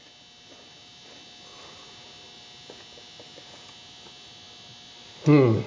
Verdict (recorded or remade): recorded